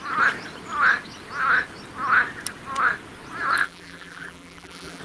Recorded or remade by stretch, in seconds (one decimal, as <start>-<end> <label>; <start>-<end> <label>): 0.0-3.6 recorded; 3.6-5.0 remade